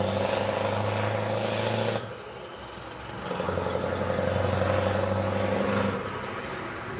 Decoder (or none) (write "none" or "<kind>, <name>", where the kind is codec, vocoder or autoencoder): none